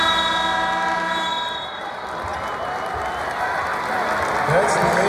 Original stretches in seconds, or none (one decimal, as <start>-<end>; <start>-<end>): 0.0-5.1